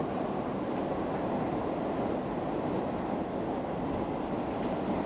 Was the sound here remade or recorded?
recorded